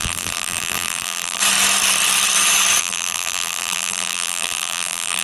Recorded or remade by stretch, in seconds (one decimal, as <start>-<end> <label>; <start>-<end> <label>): 0.0-1.4 remade; 1.4-2.8 recorded; 2.8-5.2 remade